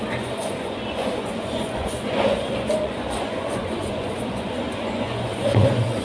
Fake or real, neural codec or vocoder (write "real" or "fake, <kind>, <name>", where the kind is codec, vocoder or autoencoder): fake, vocoder, Vocos